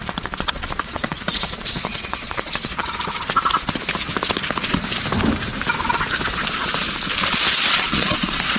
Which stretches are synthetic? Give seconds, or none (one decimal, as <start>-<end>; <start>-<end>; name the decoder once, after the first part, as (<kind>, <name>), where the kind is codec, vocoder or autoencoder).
0.0-2.8 (vocoder, Vocos); 7.7-8.6